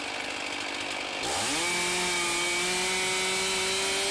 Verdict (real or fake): real